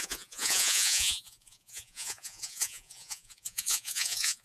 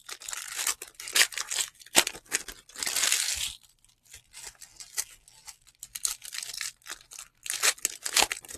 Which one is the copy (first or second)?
first